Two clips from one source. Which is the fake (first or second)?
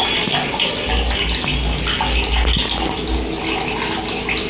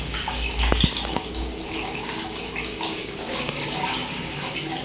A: second